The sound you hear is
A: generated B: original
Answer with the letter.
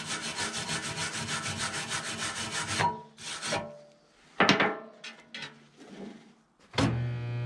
B